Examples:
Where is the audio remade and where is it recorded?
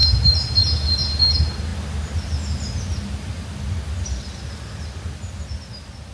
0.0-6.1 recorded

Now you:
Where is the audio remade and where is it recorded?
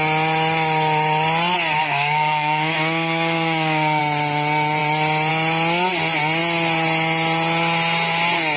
0.0-1.8 recorded; 1.8-4.0 remade; 4.0-8.6 recorded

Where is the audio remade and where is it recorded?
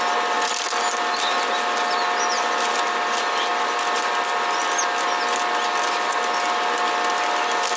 0.0-7.8 recorded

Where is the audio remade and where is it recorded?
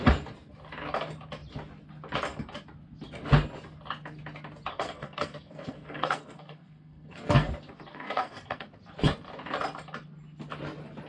0.0-4.7 recorded; 4.7-7.5 remade; 7.5-7.9 recorded; 7.9-8.8 remade; 8.8-11.1 recorded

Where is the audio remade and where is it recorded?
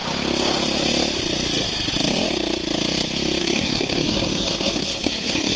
0.0-3.4 recorded; 3.4-5.6 remade